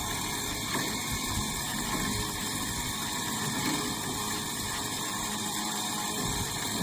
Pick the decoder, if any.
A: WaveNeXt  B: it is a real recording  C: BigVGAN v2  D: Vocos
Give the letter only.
C